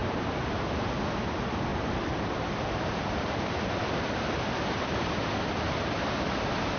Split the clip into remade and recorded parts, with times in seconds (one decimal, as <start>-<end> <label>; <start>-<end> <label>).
0.0-1.7 recorded; 1.7-5.4 remade; 5.4-6.8 recorded

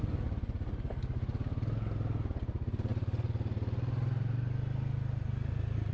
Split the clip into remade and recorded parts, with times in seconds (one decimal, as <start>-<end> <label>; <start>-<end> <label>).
0.0-5.9 recorded